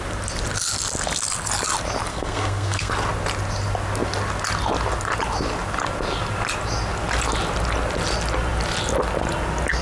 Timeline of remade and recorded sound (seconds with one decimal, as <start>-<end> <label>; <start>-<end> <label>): 0.0-2.1 recorded; 2.1-2.9 remade; 2.9-9.8 recorded